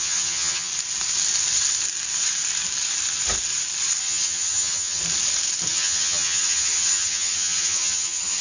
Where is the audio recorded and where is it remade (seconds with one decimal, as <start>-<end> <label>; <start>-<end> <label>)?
0.0-0.7 remade; 0.7-4.0 recorded; 4.0-5.0 remade; 5.0-5.7 recorded; 5.7-8.4 remade